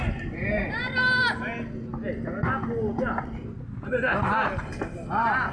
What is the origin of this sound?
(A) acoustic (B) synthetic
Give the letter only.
A